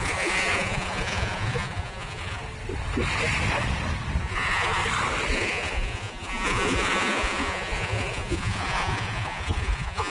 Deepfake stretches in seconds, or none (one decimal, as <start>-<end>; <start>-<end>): 0.0-2.4; 4.2-4.8; 5.3-10.1